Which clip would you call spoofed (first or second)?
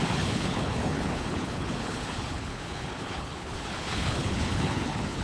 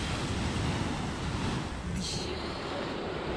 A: first